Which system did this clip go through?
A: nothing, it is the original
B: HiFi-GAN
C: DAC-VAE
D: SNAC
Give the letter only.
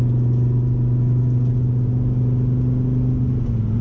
A